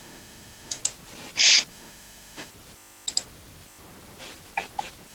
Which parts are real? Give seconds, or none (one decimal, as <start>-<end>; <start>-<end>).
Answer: 0.8-1.7; 2.5-5.1